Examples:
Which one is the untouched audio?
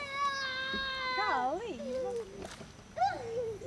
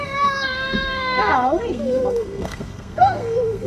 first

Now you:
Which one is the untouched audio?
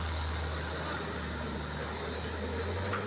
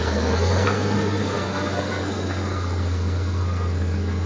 first